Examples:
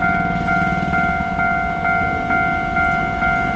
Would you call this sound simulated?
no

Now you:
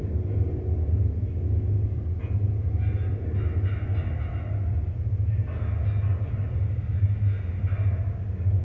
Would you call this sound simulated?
no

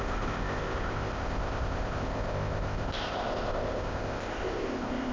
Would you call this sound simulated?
yes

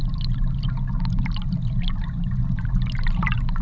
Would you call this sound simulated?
no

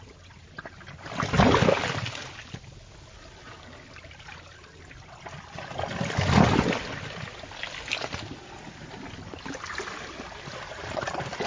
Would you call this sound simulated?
no